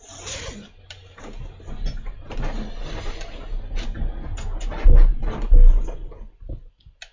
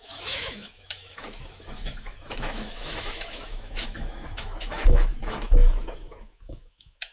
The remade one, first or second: second